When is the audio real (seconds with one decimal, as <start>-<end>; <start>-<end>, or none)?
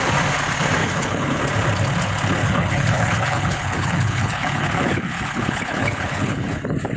0.0-0.8; 1.4-2.4; 6.6-7.0